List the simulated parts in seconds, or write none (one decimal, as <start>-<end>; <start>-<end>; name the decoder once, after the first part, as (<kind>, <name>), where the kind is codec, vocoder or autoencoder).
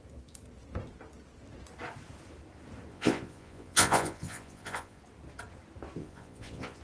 2.9-5.0 (vocoder, Vocos); 6.0-6.8